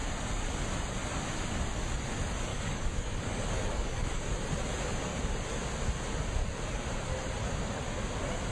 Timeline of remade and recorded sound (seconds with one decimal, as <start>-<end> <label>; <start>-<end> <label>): 0.0-2.5 recorded; 2.5-4.2 remade; 4.2-8.5 recorded